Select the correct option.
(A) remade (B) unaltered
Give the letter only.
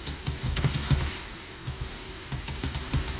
A